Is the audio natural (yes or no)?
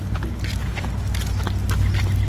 yes